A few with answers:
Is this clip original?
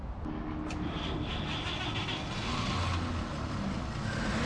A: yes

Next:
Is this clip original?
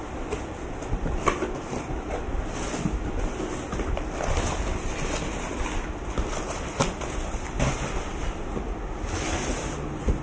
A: yes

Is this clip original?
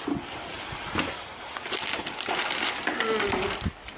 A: yes